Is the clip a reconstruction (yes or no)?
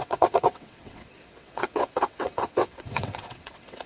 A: yes